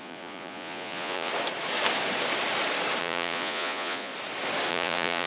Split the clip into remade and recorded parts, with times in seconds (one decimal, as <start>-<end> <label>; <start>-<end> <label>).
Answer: 0.0-1.3 remade; 1.3-3.0 recorded; 3.0-4.1 remade; 4.1-4.7 recorded; 4.7-5.3 remade